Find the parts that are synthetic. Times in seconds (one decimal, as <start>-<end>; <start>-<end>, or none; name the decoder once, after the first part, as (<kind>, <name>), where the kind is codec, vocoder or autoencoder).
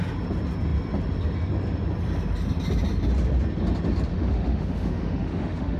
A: 4.1-5.8 (autoencoder, DAC-VAE)